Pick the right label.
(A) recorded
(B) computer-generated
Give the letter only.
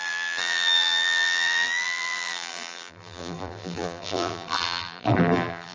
B